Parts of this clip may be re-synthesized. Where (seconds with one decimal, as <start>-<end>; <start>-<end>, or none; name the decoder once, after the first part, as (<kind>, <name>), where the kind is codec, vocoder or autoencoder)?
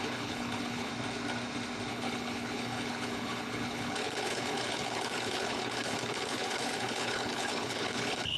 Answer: 0.0-0.9 (codec, HILCodec); 1.9-8.4